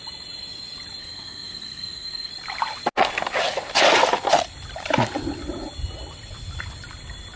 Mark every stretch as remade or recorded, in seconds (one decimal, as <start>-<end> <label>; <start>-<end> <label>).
0.0-1.0 recorded; 1.0-2.3 remade; 2.3-7.4 recorded